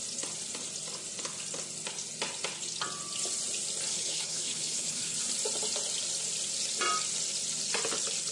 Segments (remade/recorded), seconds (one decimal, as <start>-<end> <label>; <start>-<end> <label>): 0.0-3.9 recorded; 3.9-5.2 remade; 5.2-8.3 recorded